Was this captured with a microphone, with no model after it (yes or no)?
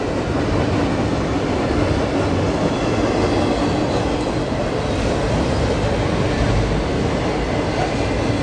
yes